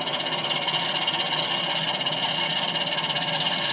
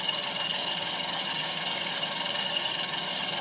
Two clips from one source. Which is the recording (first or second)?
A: first